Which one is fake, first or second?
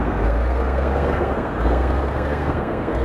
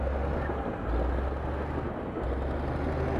first